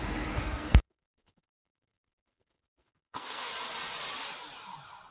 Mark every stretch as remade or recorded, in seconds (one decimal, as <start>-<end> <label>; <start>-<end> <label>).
0.0-0.4 recorded; 0.4-3.5 remade; 3.5-5.1 recorded